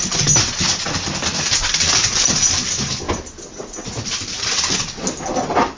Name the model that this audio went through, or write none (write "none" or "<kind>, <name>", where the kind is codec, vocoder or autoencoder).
none